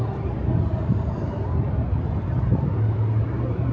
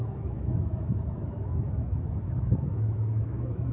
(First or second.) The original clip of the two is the first